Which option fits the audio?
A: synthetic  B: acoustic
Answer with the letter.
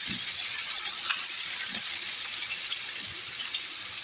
A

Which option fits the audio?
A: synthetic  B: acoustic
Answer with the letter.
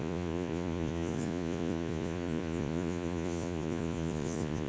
A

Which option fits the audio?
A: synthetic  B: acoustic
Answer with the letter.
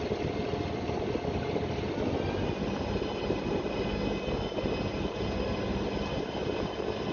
B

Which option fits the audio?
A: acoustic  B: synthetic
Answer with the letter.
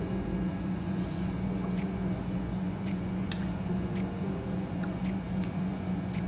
B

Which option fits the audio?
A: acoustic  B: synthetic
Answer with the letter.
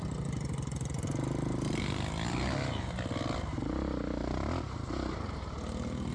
A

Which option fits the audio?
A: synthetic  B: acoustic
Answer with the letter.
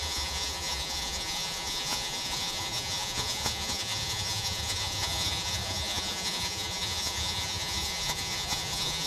A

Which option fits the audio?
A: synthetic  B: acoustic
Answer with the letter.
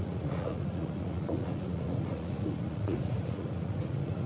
A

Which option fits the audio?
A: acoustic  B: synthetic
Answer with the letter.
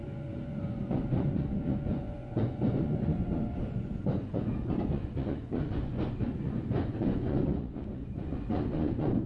B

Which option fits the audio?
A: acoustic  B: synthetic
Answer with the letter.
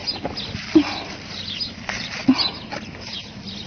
A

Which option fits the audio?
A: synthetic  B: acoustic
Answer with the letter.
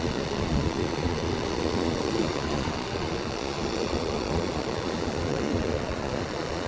A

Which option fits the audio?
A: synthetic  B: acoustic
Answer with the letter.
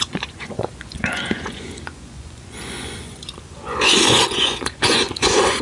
A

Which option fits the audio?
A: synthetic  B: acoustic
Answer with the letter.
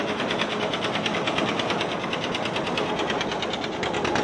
B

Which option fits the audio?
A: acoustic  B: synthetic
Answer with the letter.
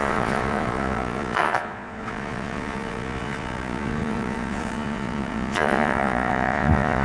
B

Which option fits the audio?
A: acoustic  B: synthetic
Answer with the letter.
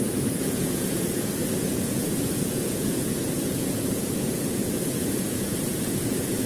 B